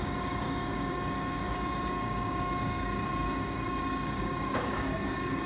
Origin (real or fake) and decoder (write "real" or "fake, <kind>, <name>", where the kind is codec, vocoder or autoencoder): fake, codec, DAC